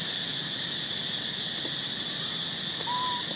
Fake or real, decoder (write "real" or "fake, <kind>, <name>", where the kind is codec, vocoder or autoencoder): real